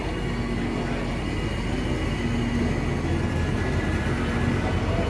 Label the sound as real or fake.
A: real